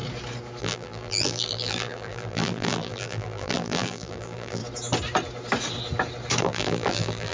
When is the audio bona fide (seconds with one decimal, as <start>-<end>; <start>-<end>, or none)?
0.0-0.6; 4.6-6.4